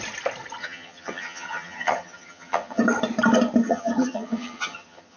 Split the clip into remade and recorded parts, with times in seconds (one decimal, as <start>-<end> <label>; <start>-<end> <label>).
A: 0.0-0.6 recorded; 0.6-2.8 remade; 2.8-3.6 recorded; 3.6-5.2 remade